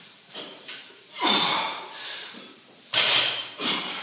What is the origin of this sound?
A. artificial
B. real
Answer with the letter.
A